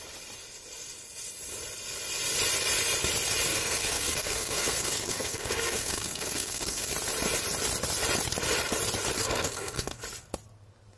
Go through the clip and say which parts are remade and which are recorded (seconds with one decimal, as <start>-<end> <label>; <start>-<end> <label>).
0.0-3.5 recorded; 3.5-6.9 remade; 6.9-9.2 recorded; 9.2-10.0 remade; 10.0-11.0 recorded